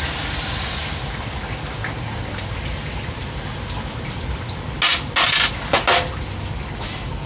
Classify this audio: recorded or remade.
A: recorded